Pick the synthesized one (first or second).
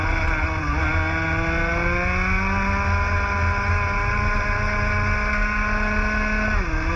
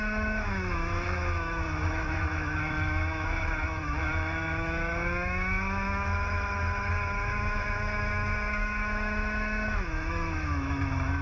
second